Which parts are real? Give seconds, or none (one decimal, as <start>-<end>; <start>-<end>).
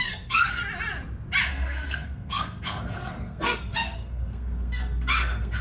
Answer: 0.6-1.5